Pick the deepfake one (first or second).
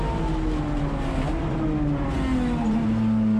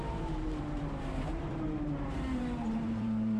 second